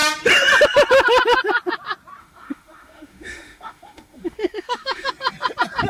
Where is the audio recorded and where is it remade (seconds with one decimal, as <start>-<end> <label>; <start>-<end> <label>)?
0.0-2.2 recorded; 2.2-5.1 remade; 5.1-5.9 recorded